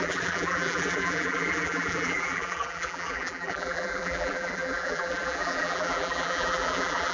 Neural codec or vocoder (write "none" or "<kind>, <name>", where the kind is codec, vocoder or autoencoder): vocoder, BigVGAN v2